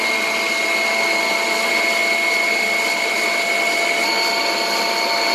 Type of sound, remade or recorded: recorded